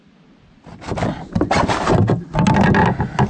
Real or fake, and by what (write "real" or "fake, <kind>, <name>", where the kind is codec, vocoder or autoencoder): real